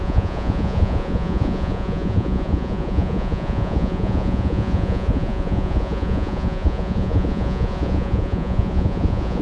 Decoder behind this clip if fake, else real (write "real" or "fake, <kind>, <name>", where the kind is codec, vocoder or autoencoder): fake, vocoder, Vocos